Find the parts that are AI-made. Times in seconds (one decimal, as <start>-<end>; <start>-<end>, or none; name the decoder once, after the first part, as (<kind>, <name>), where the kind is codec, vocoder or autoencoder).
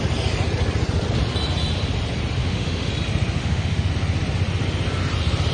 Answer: 2.4-2.9 (autoencoder, DAC-VAE); 3.4-3.9